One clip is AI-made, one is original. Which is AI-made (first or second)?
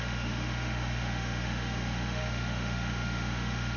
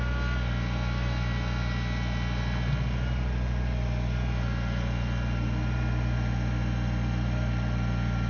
first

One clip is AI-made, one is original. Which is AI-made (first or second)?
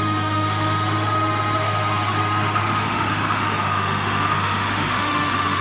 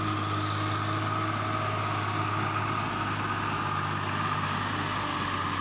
first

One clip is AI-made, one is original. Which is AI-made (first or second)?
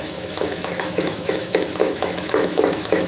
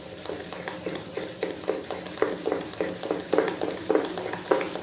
first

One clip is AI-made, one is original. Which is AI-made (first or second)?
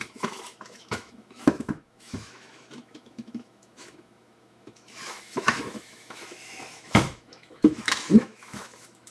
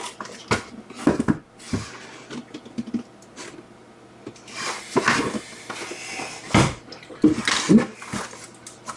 first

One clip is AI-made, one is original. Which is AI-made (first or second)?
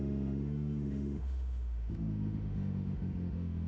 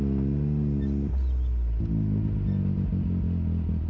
first